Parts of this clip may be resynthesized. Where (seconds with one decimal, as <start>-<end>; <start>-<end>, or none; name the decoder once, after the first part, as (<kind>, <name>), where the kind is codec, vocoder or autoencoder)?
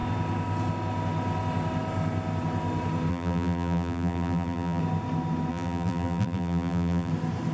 3.1-4.8 (vocoder, BigVGAN v2); 5.5-7.1